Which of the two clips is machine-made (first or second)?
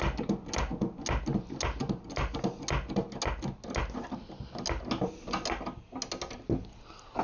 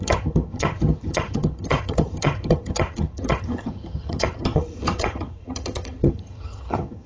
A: second